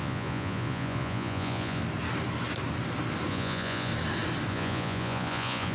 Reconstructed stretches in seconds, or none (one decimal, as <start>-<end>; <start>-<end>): 0.0-1.8; 3.3-3.9; 4.5-5.7

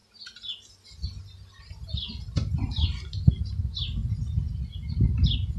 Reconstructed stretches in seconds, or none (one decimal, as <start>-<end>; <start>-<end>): none

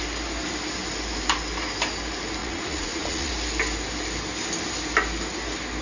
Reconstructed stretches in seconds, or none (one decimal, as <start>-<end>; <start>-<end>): 2.4-3.3